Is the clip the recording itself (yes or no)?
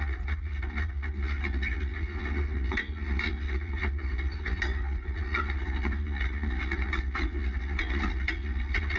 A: no